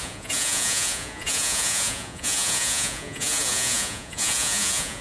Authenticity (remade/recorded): remade